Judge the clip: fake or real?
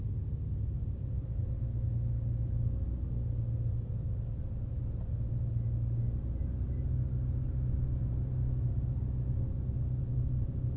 real